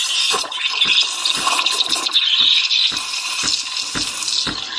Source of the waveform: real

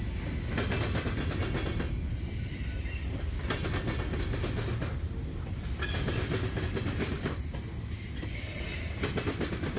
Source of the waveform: real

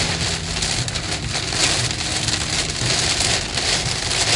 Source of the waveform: real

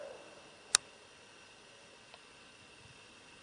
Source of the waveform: real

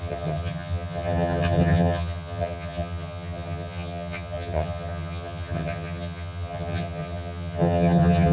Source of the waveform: fake